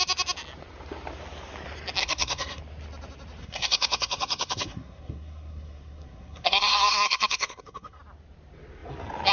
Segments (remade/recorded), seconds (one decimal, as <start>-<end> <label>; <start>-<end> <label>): 0.0-2.0 recorded; 2.0-2.6 remade; 2.6-3.4 recorded; 3.4-8.0 remade; 8.0-9.3 recorded